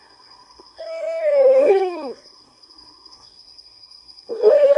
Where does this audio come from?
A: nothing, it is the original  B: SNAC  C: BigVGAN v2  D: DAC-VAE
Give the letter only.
B